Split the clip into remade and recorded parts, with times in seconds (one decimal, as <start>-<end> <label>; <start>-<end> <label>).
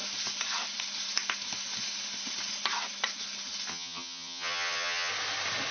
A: 0.0-3.7 recorded; 3.7-5.1 remade; 5.1-5.7 recorded